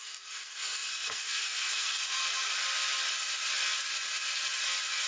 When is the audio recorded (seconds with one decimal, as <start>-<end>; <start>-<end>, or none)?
2.5-5.1